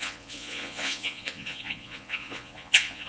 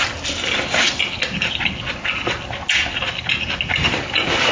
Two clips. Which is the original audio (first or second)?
second